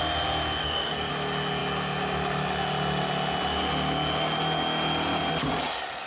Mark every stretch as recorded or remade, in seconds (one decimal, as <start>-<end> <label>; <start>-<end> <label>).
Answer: 0.0-0.6 recorded; 0.6-1.1 remade; 1.1-6.1 recorded